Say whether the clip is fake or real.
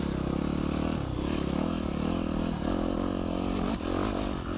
real